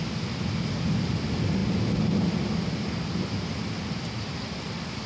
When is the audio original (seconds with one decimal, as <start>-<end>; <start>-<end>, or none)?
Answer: 0.0-5.1